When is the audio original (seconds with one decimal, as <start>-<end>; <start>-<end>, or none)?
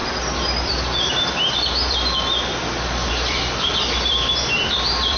none